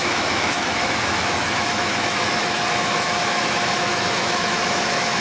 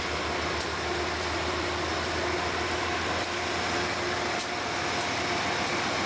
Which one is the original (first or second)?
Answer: second